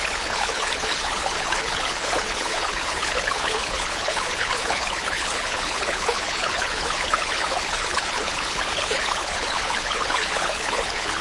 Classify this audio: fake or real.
fake